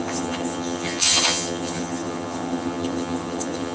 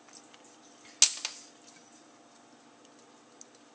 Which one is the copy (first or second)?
first